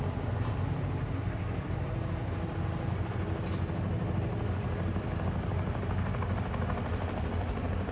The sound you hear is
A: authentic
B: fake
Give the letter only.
A